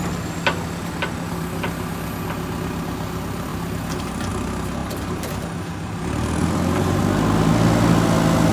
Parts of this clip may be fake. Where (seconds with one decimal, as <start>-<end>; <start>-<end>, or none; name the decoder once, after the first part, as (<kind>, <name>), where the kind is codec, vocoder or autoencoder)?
3.5-4.3 (vocoder, BigVGAN v2); 4.8-6.0; 6.4-7.0